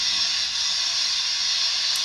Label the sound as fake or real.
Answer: real